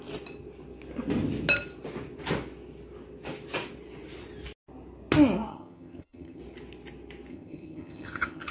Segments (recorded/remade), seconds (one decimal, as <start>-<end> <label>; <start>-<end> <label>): 0.0-5.5 recorded; 5.5-6.4 remade; 6.4-7.3 recorded; 7.3-8.5 remade